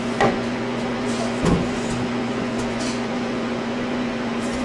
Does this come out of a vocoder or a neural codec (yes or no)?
yes